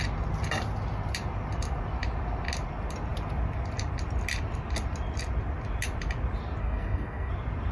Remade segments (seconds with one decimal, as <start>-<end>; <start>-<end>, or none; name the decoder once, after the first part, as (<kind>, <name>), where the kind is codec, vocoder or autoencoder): 6.6-7.3 (codec, SNAC)